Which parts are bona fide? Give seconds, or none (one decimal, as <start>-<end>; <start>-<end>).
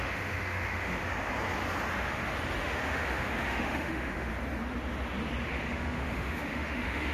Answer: 1.1-2.6; 4.3-5.7